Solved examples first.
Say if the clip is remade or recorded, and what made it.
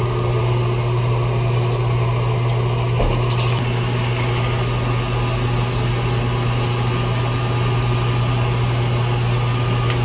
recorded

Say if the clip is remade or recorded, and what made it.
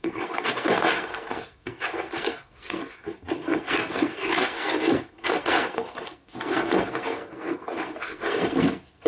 remade, codec, SNAC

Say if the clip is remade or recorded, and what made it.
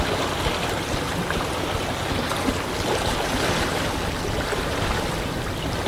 recorded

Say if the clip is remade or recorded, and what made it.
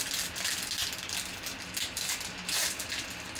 recorded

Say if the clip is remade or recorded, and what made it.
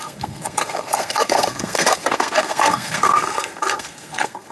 remade, codec, SNAC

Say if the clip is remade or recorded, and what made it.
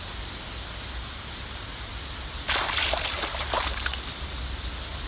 recorded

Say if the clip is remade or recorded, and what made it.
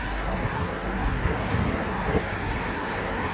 remade, codec, SNAC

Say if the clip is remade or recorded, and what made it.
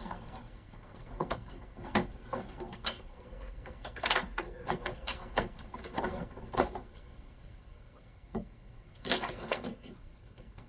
remade, codec, SNAC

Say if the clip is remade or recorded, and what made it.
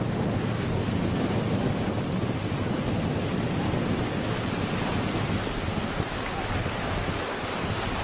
recorded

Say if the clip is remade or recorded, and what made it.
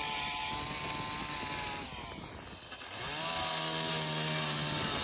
recorded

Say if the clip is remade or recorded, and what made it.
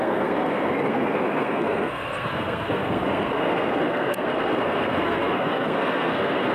remade, codec, SNAC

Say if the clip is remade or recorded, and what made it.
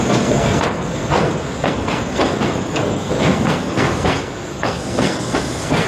remade, codec, SNAC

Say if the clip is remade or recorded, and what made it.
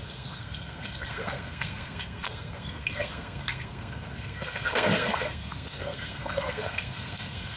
remade, codec, SNAC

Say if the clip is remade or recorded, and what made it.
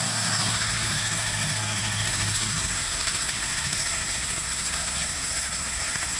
remade, codec, SNAC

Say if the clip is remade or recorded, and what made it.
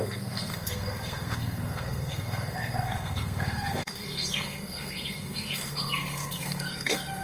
remade, codec, SNAC